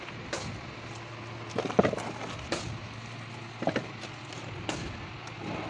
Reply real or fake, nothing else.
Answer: real